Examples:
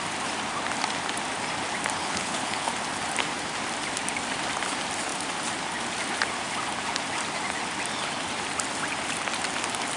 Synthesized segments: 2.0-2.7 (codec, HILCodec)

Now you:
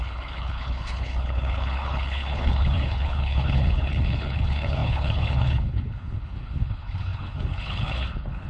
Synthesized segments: 0.0-8.5 (codec, HILCodec)

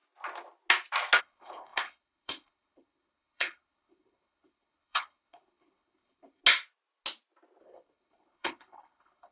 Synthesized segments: 1.2-6.4 (codec, HILCodec); 7.6-9.3